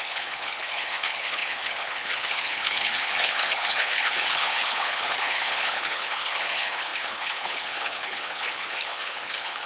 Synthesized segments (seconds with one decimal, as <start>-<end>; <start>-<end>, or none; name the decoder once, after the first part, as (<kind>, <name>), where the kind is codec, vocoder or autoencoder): 0.0-9.7 (codec, HILCodec)